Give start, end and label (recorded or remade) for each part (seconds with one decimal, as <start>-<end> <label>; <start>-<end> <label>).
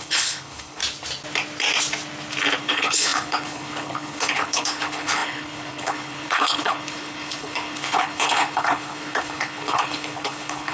0.0-0.8 remade; 0.8-2.6 recorded; 2.6-10.7 remade